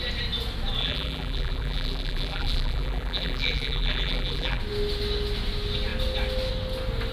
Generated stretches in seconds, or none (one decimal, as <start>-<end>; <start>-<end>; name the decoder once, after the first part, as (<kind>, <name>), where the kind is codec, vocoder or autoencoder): 0.8-4.6 (vocoder, BigVGAN v2)